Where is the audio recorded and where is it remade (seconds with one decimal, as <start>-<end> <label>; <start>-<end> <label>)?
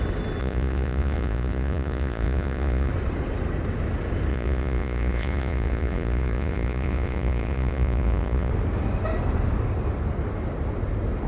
0.0-0.4 recorded; 0.4-2.9 remade; 2.9-4.3 recorded; 4.3-8.5 remade; 8.5-11.3 recorded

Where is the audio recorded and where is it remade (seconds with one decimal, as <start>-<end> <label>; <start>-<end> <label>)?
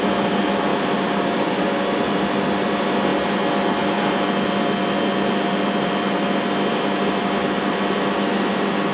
0.0-0.7 recorded; 0.7-1.6 remade; 1.6-8.9 recorded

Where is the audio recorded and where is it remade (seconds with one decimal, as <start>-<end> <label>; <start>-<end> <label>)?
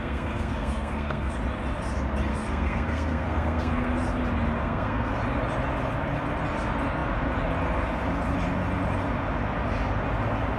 0.0-1.3 remade; 1.3-2.3 recorded; 2.3-3.9 remade; 3.9-4.6 recorded; 4.6-5.1 remade; 5.1-10.6 recorded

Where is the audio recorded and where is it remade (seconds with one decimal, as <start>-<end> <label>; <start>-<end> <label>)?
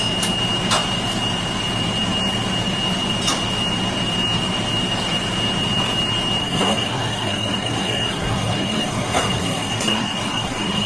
0.0-6.4 recorded; 6.4-10.9 remade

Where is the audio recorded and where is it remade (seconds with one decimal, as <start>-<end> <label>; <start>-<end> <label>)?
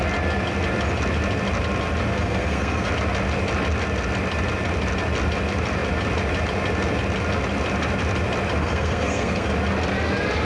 0.0-2.1 recorded; 2.1-2.9 remade; 2.9-8.6 recorded; 8.6-9.5 remade; 9.5-10.4 recorded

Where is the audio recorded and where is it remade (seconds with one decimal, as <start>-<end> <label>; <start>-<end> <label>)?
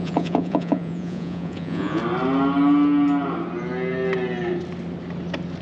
0.0-2.0 remade; 2.0-5.6 recorded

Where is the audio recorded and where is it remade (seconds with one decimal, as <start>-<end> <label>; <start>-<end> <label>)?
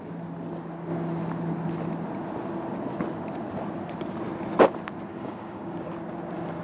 0.0-5.1 recorded; 5.1-5.9 remade; 5.9-6.6 recorded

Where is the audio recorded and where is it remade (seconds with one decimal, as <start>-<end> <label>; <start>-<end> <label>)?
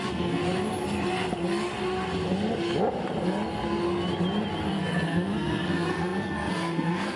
0.0-0.4 remade; 0.4-4.7 recorded; 4.7-7.2 remade